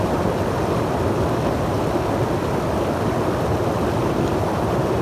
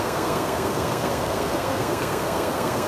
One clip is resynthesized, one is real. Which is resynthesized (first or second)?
second